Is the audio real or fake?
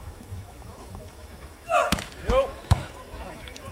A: fake